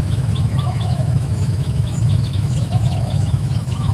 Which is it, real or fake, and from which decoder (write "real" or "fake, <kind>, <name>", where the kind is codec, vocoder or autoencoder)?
fake, autoencoder, DAC-VAE